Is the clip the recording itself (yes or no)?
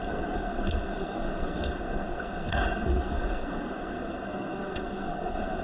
no